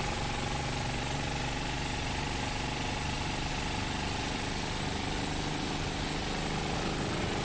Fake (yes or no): no